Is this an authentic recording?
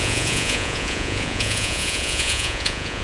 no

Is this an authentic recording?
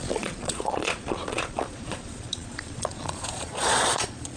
no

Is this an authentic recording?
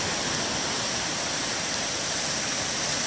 yes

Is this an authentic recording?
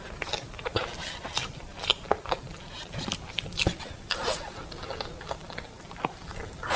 yes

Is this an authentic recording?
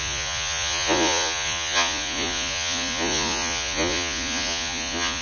no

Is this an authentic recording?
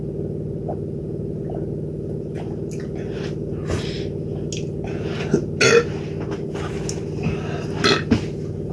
yes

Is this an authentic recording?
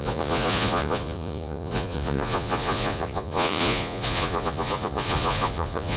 no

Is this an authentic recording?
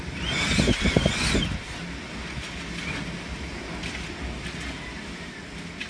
yes